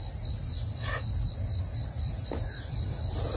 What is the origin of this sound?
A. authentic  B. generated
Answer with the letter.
A